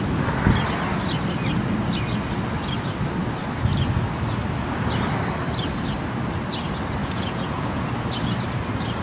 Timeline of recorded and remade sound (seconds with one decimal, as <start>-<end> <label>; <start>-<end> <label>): 0.0-7.0 recorded; 7.0-7.9 remade; 7.9-9.0 recorded